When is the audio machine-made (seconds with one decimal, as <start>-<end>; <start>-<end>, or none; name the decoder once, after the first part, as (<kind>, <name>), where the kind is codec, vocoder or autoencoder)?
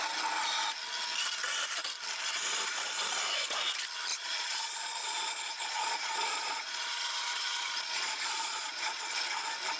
4.1-9.1 (vocoder, Vocos)